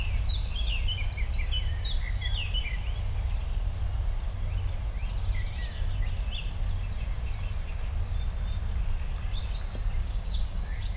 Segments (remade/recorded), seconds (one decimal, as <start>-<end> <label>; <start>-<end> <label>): 0.0-10.0 recorded; 10.0-11.0 remade